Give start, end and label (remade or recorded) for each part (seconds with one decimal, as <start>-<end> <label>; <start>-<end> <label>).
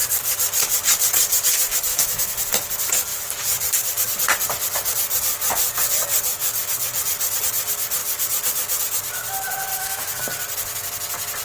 0.0-1.9 recorded; 1.9-2.5 remade; 2.5-9.7 recorded; 9.7-10.2 remade; 10.2-11.4 recorded